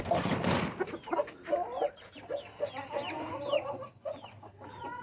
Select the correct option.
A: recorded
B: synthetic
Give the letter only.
A